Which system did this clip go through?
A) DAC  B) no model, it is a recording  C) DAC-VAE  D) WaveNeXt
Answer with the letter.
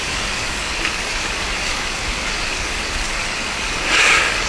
A